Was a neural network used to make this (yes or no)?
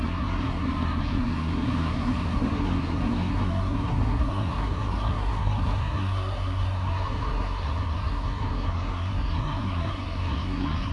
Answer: yes